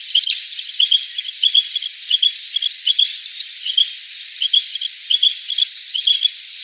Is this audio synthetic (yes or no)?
no